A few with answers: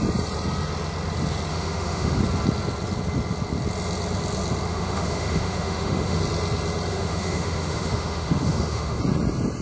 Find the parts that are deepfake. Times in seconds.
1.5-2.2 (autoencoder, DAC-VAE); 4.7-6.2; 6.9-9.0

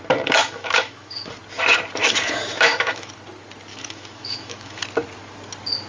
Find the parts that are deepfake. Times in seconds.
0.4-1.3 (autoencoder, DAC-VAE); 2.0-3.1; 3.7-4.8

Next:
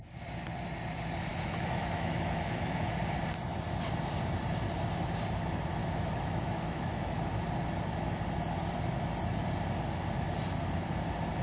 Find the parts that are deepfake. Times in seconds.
1.3-2.8 (autoencoder, DAC-VAE); 5.8-7.2